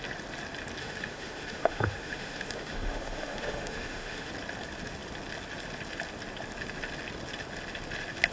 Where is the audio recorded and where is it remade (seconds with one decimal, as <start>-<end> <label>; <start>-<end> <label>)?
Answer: 0.0-0.8 recorded; 0.8-4.3 remade; 4.3-8.3 recorded